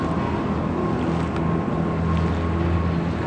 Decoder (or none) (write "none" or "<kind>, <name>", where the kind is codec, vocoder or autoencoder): none